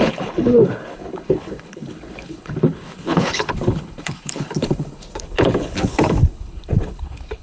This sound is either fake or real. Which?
fake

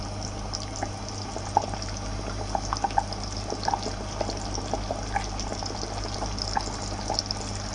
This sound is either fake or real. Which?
real